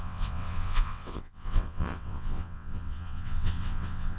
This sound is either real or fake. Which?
fake